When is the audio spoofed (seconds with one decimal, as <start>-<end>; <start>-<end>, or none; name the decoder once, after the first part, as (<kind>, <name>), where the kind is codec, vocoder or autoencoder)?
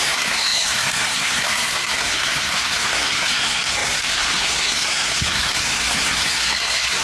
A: 0.0-7.0 (codec, SNAC)